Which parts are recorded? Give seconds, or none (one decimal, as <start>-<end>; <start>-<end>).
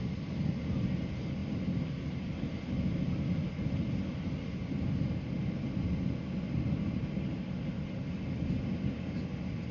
0.0-9.7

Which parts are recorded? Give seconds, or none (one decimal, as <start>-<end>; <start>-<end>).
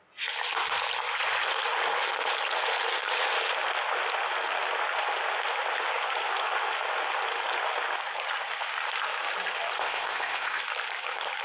0.0-9.8; 10.6-11.4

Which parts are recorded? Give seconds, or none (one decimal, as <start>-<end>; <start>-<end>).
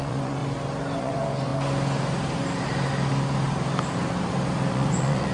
0.4-1.0; 1.5-4.7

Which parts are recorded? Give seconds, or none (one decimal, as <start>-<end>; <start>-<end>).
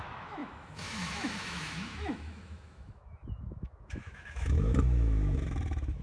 none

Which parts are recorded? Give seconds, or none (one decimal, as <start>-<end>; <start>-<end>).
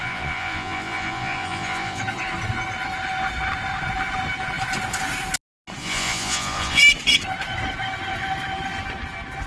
2.0-5.8; 6.8-9.5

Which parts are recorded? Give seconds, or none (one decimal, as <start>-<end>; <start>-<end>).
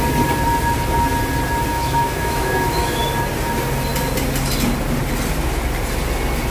0.0-1.7; 3.0-6.5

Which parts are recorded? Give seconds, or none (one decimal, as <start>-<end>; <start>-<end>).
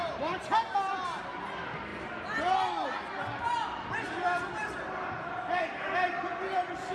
0.0-6.9